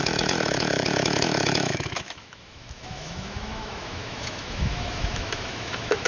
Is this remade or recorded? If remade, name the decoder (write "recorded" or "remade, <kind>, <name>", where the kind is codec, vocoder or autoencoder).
remade, autoencoder, DAC-VAE